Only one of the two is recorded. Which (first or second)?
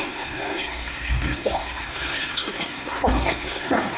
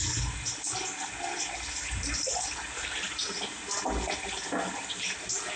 second